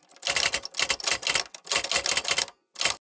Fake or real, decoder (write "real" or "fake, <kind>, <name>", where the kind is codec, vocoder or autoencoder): real